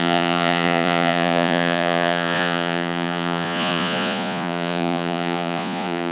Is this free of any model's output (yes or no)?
no